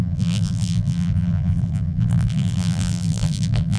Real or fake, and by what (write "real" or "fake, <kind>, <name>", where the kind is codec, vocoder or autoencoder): fake, vocoder, BigVGAN v2